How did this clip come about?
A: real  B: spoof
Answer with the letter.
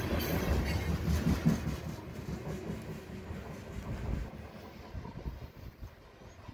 A